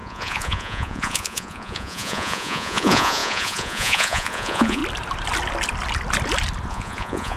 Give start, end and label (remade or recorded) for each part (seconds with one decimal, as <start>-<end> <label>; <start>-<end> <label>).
0.0-4.8 remade; 4.8-6.7 recorded; 6.7-7.4 remade